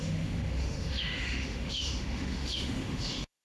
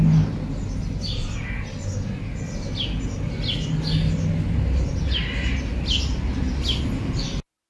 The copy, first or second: first